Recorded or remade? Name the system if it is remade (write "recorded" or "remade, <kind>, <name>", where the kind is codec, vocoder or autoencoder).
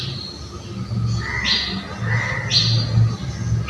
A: recorded